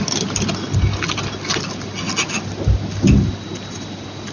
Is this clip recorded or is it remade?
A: recorded